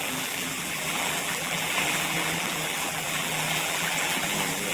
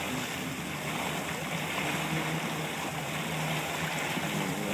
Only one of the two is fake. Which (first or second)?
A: first